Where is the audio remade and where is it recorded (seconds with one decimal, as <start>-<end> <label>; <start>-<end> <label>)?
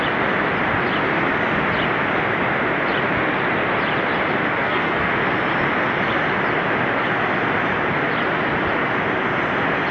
0.0-4.6 recorded; 4.6-5.1 remade; 5.1-9.9 recorded